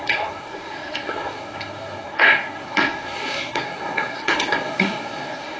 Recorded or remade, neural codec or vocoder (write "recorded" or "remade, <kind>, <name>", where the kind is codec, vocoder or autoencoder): remade, codec, SNAC